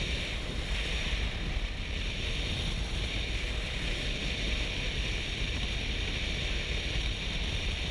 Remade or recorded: recorded